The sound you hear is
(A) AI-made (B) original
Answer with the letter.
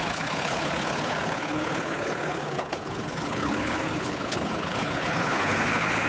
A